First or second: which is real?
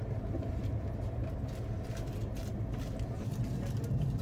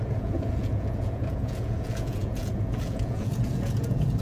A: first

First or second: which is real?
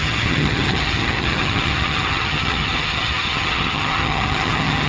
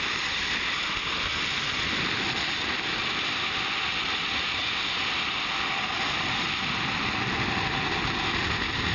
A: second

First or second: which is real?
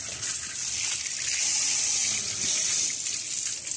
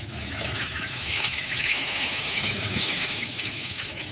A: first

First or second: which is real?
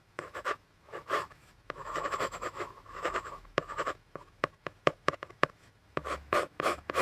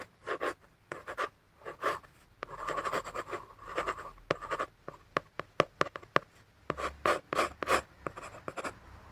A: second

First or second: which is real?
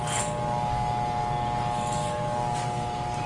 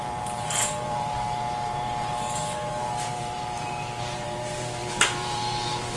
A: first